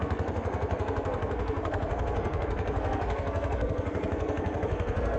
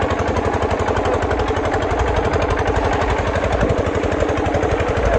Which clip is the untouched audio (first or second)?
second